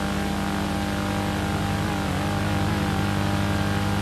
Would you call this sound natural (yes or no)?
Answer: yes